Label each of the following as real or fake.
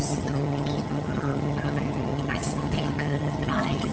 fake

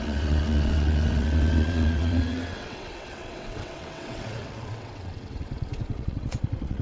fake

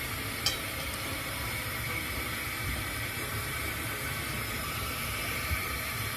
fake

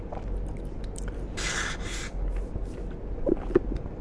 real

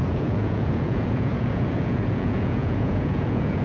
fake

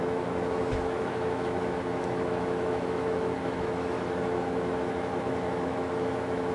fake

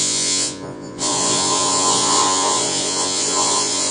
fake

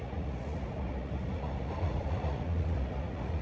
fake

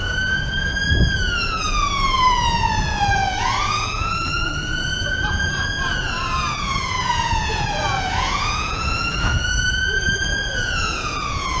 fake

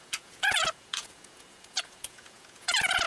fake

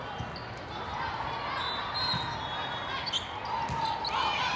real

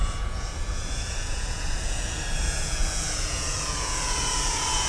fake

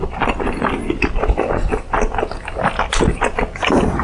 real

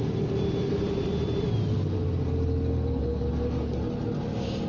real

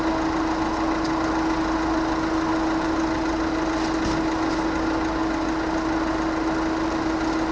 real